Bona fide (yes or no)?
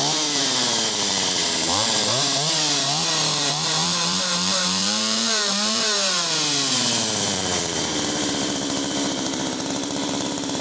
no